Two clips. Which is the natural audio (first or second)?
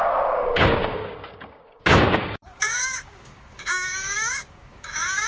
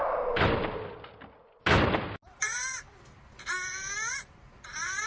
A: second